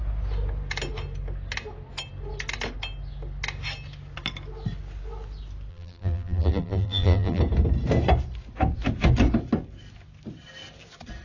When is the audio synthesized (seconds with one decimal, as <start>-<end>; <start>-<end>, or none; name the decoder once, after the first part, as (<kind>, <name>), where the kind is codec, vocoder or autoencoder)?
5.7-7.4 (vocoder, BigVGAN v2)